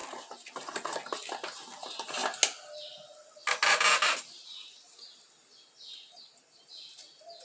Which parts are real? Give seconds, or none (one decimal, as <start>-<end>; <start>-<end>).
0.0-7.4